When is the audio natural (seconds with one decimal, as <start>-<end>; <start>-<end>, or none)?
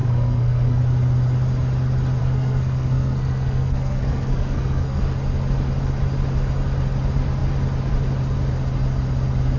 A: 0.8-2.2; 5.0-9.6